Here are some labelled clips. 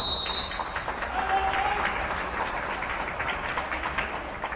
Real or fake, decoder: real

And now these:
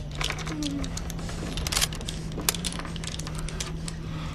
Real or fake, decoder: real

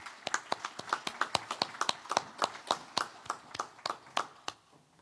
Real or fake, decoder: real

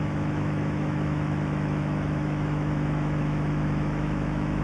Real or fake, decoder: fake, autoencoder, DAC-VAE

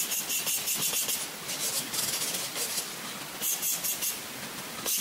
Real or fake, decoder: real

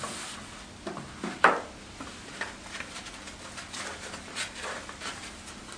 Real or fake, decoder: real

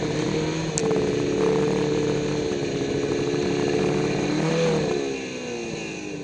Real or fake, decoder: real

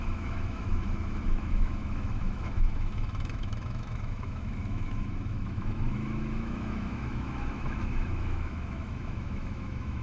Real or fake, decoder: fake, autoencoder, DAC-VAE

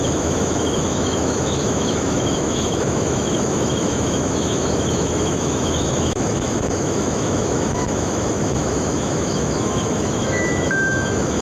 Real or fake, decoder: fake, autoencoder, DAC-VAE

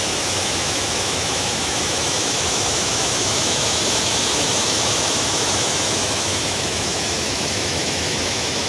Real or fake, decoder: fake, autoencoder, DAC-VAE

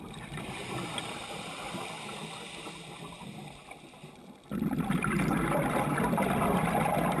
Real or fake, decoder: real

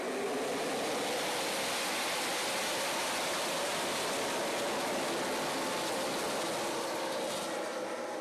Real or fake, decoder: real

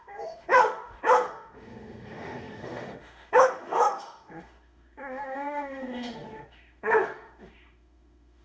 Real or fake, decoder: fake, autoencoder, DAC-VAE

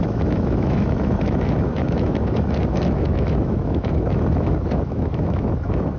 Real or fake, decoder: fake, autoencoder, DAC-VAE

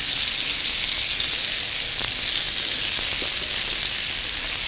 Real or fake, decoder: real